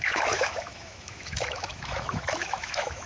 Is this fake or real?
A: fake